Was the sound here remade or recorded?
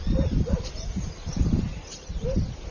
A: recorded